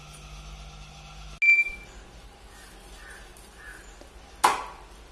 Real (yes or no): yes